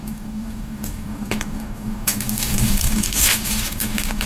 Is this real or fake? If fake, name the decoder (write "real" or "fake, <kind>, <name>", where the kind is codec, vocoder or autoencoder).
fake, codec, DAC